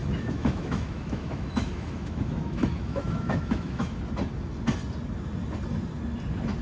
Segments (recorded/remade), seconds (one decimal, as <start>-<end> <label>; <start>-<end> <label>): 0.0-4.0 remade; 4.0-6.6 recorded